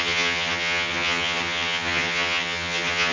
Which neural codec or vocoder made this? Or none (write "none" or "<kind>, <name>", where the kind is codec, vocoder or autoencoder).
vocoder, HiFi-GAN